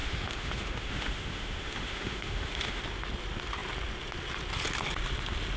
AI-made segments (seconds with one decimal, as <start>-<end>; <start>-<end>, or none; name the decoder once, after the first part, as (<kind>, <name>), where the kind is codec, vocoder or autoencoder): 0.0-2.8 (autoencoder, DAC-VAE)